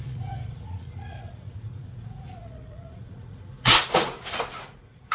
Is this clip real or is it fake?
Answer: fake